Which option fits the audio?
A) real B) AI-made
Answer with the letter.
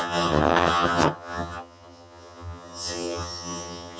B